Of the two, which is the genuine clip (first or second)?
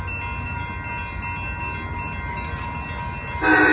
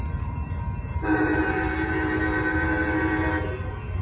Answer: first